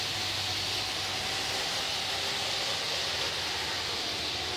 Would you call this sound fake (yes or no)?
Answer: no